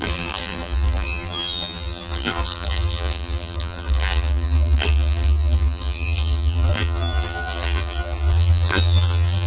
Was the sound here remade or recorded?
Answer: remade